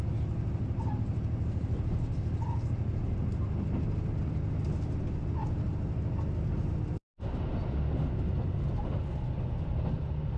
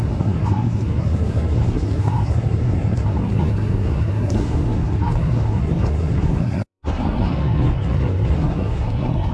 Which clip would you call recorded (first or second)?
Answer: first